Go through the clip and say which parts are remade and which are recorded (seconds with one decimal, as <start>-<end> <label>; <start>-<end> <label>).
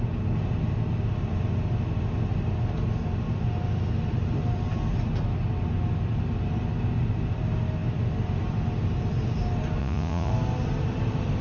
0.0-9.8 recorded; 9.8-10.3 remade; 10.3-11.4 recorded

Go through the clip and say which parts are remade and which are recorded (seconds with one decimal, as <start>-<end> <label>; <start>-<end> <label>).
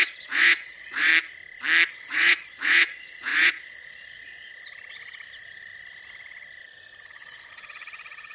0.0-1.1 remade; 1.1-1.9 recorded; 1.9-4.5 remade; 4.5-7.1 recorded; 7.1-8.3 remade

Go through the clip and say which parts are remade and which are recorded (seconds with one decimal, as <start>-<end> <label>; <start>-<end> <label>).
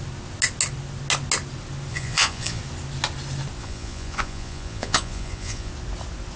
0.0-1.9 recorded; 1.9-2.6 remade; 2.6-3.6 recorded; 3.6-5.7 remade; 5.7-6.4 recorded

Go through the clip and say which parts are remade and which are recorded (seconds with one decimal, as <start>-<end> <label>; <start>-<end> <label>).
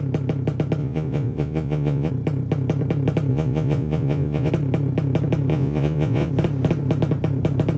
0.0-0.8 recorded; 0.8-2.1 remade; 2.1-3.3 recorded; 3.3-4.5 remade; 4.5-5.5 recorded; 5.5-6.3 remade; 6.3-7.8 recorded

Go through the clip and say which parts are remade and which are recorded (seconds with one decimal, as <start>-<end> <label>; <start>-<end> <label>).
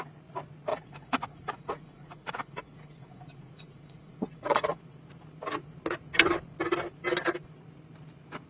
0.0-0.7 recorded; 0.7-4.8 remade; 4.8-8.5 recorded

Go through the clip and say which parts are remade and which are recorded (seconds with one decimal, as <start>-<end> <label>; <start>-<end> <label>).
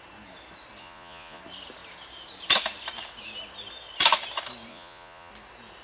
0.0-0.8 recorded; 0.8-1.4 remade; 1.4-4.7 recorded; 4.7-5.3 remade; 5.3-5.8 recorded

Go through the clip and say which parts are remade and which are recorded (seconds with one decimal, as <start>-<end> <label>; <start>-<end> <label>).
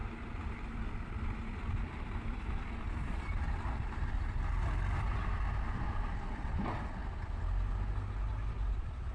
0.0-9.1 recorded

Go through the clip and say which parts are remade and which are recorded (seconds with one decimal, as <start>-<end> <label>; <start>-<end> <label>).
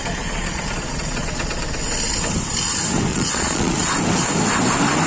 0.0-1.5 remade; 1.5-3.1 recorded; 3.1-3.9 remade; 3.9-5.1 recorded